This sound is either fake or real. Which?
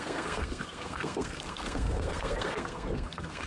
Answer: fake